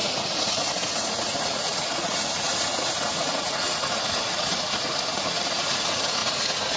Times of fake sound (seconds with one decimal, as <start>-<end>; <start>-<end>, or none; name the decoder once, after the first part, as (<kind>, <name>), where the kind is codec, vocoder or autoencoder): 0.0-6.8 (vocoder, Vocos)